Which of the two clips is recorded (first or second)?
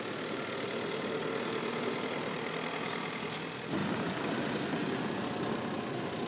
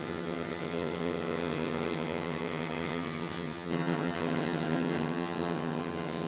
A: first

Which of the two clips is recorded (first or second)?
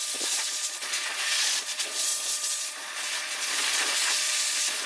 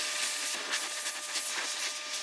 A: second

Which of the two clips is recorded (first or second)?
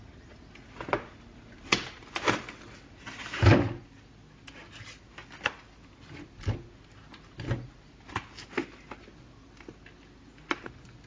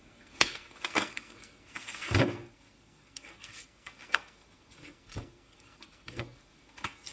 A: first